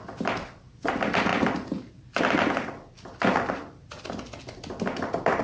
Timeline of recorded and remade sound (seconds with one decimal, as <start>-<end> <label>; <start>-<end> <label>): 0.0-5.4 recorded